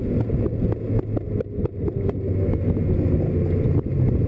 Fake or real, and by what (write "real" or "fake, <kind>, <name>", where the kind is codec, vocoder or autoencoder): real